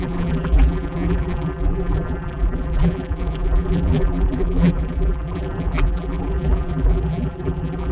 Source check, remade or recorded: remade